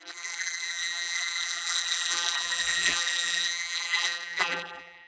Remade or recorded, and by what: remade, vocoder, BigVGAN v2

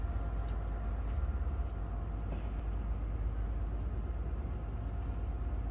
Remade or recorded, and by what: recorded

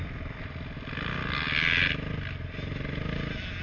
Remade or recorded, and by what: recorded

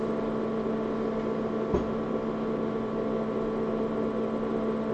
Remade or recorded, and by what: recorded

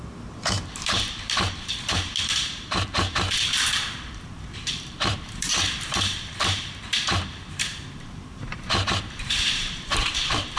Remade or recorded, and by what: remade, vocoder, BigVGAN v2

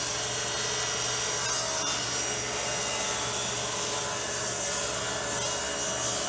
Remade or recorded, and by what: recorded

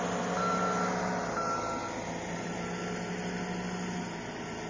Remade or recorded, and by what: recorded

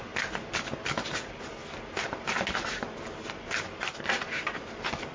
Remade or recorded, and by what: recorded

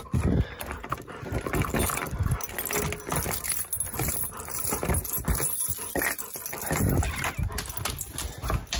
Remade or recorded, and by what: recorded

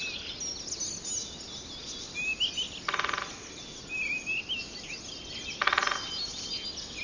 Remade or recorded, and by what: recorded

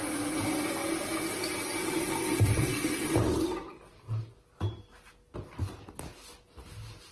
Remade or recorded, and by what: recorded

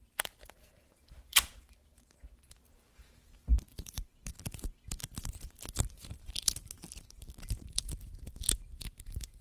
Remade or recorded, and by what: remade, vocoder, BigVGAN v2